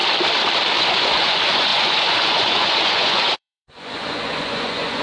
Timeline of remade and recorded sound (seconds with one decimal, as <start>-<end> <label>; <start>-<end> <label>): 0.0-0.8 recorded; 0.8-5.0 remade